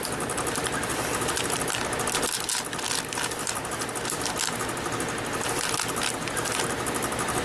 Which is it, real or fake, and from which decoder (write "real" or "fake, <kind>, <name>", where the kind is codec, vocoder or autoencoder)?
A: real